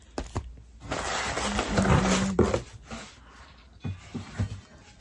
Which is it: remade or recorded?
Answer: recorded